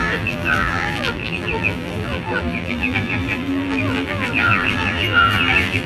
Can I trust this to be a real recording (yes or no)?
no